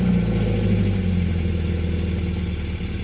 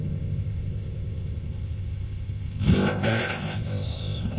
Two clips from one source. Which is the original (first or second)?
first